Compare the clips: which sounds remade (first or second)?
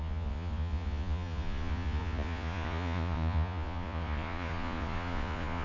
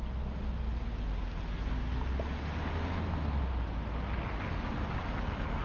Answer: first